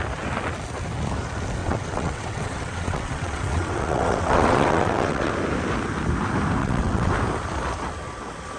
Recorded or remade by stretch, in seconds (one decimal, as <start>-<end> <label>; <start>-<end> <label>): 0.0-1.6 recorded; 1.6-5.3 remade; 5.3-6.6 recorded; 6.6-7.1 remade; 7.1-8.6 recorded